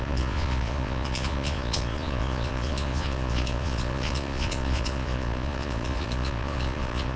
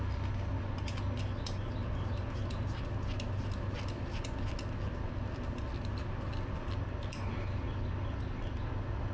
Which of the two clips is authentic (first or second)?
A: second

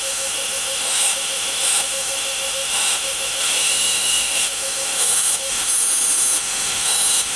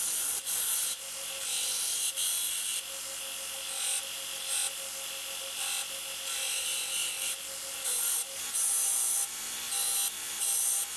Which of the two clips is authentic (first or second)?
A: second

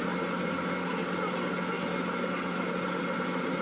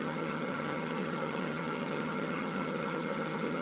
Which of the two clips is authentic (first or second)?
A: first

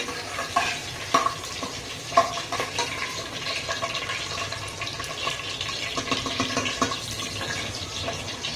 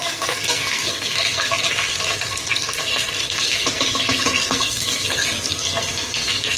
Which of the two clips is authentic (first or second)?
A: first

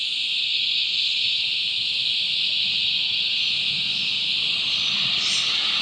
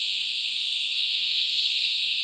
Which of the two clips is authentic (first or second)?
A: first